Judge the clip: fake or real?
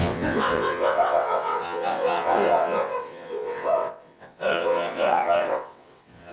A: fake